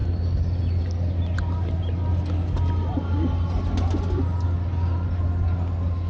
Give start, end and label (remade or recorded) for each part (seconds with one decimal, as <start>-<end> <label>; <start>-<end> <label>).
0.0-6.1 recorded